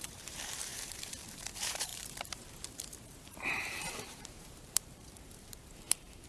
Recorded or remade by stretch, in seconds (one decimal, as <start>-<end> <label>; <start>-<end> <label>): 0.0-6.3 remade